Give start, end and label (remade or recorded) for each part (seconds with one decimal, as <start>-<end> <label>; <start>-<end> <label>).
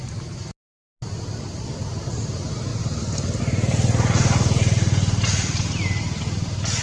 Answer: 0.0-6.8 recorded